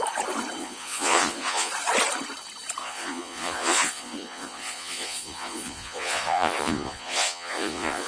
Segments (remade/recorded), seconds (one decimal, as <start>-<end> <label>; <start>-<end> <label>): 0.0-0.6 recorded; 0.6-1.7 remade; 1.7-2.8 recorded; 2.8-8.1 remade